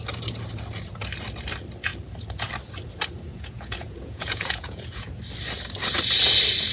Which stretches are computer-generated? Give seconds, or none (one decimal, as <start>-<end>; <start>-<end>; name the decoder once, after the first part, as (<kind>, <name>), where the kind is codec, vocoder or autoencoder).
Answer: 3.3-5.1 (vocoder, Vocos)